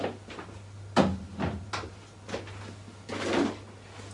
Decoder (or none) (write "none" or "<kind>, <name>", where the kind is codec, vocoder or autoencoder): none